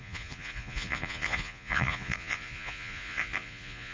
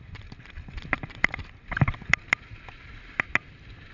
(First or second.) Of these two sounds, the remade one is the first